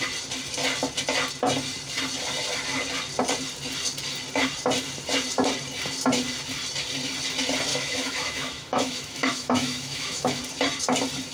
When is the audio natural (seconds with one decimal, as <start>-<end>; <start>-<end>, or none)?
0.0-7.7; 10.4-11.3